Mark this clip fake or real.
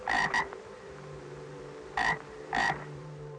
fake